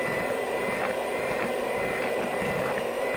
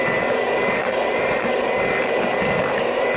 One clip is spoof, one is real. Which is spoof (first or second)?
first